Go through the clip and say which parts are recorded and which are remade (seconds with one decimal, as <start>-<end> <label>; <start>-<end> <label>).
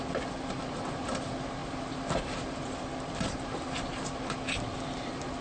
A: 0.0-5.4 recorded